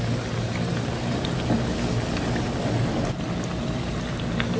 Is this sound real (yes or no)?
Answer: yes